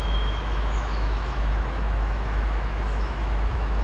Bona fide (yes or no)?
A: no